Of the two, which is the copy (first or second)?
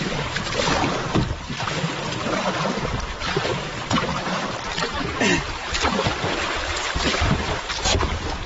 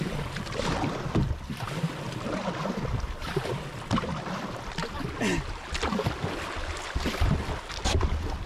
first